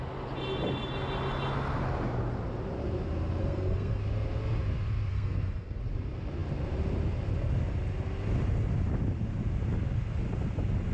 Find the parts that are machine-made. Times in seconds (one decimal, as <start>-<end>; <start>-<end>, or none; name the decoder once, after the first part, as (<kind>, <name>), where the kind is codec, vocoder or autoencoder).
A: 3.4-4.0 (codec, SNAC); 5.1-5.8